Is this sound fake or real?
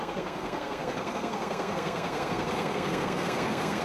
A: fake